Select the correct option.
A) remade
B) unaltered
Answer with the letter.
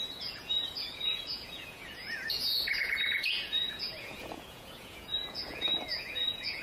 A